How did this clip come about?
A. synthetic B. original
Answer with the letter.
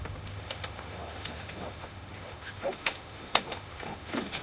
A